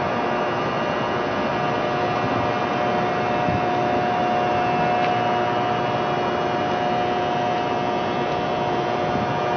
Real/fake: real